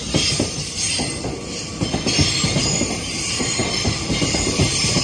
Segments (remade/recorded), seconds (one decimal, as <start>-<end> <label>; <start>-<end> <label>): 0.0-3.0 recorded; 3.0-5.0 remade